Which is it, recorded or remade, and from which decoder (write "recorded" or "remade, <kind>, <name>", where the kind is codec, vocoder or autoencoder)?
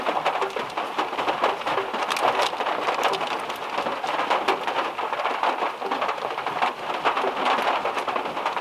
recorded